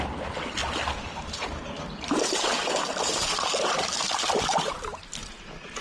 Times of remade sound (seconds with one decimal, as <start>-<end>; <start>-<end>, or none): none